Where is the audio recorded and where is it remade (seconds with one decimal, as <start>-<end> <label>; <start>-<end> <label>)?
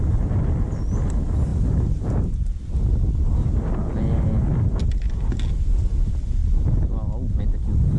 0.0-8.0 recorded